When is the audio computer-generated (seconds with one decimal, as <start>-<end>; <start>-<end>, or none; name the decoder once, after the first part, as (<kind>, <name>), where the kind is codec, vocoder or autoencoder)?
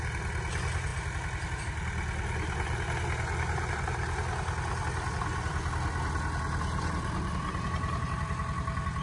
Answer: none